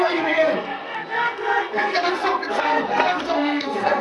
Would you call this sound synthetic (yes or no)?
yes